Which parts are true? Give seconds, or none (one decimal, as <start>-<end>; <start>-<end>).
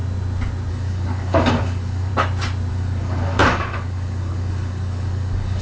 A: 0.0-0.7; 2.1-2.7